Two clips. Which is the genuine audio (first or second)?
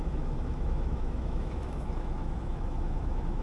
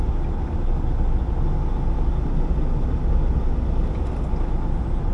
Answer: second